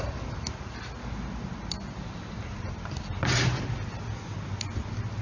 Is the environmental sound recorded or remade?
recorded